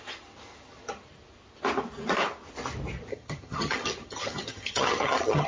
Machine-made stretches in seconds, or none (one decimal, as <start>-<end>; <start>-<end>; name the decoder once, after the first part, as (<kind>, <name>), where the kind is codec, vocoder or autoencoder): 3.1-5.5 (vocoder, HiFi-GAN)